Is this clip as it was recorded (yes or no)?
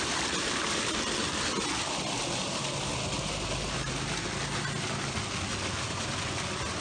yes